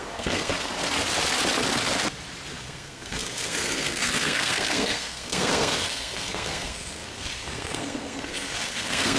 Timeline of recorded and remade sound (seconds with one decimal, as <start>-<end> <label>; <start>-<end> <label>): 0.0-0.5 remade; 0.5-2.6 recorded; 2.6-9.2 remade